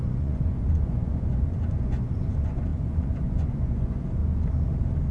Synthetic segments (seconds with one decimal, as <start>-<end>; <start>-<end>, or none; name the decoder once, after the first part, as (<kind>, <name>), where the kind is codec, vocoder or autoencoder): 0.0-4.2 (vocoder, Vocos)